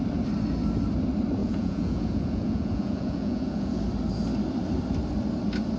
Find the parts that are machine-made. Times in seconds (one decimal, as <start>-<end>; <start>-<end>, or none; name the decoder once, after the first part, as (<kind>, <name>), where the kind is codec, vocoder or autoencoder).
1.4-3.8 (vocoder, Vocos)